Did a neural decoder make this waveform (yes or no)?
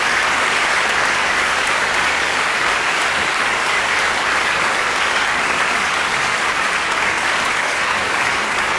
yes